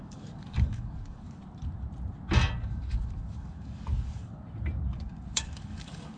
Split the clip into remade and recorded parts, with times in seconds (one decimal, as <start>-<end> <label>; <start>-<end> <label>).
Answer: 0.0-1.4 remade; 1.4-2.6 recorded; 2.6-4.3 remade; 4.3-4.9 recorded; 4.9-6.2 remade